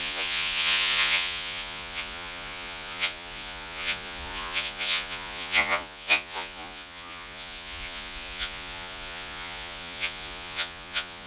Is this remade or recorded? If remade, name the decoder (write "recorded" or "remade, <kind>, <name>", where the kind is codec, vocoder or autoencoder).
remade, vocoder, Vocos